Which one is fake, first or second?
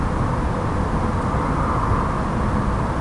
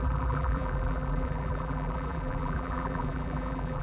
second